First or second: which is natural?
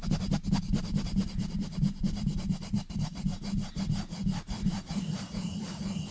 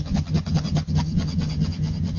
first